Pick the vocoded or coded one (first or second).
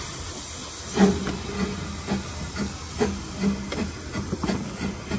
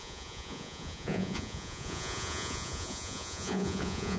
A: second